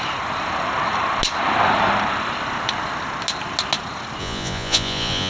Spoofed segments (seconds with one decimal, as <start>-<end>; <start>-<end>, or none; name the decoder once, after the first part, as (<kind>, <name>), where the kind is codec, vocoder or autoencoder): 4.2-5.3 (vocoder, Vocos)